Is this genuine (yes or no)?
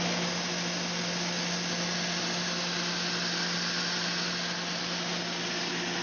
yes